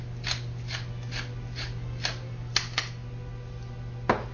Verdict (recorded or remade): recorded